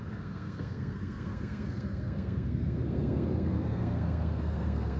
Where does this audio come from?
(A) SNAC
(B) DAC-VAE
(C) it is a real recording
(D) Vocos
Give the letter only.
A